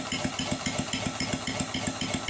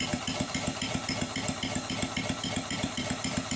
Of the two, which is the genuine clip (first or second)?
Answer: first